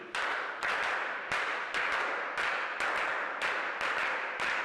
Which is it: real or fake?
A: real